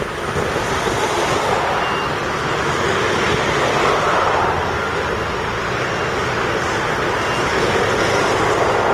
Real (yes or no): yes